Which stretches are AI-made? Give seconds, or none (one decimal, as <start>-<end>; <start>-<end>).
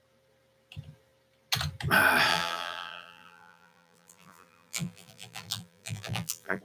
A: 2.3-6.6